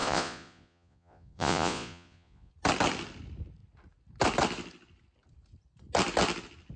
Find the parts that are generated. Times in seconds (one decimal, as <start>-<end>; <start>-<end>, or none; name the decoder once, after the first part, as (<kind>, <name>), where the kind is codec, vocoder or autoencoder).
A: 0.0-2.5 (vocoder, Vocos)